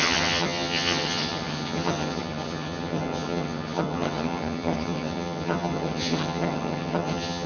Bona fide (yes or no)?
no